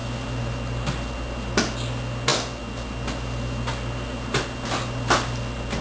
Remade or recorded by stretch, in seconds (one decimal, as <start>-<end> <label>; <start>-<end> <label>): 0.0-5.8 recorded